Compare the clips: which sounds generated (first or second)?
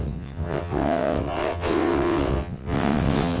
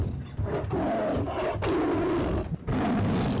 first